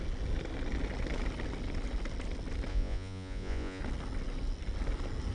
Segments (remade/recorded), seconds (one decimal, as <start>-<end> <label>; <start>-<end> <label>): 0.0-2.7 recorded; 2.7-3.8 remade; 3.8-5.3 recorded